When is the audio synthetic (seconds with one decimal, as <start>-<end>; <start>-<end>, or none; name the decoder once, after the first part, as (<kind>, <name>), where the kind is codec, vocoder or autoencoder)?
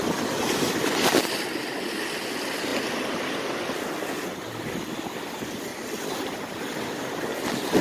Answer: none